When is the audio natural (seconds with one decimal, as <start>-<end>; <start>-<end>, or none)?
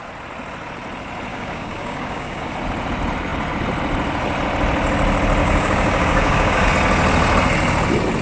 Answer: 0.0-1.3; 2.5-5.4; 6.7-8.2